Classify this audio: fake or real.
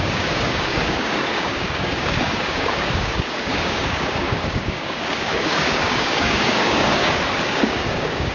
fake